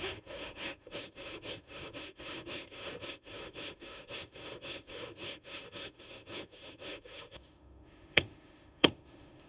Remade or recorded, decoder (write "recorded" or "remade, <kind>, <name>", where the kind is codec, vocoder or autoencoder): remade, autoencoder, DAC-VAE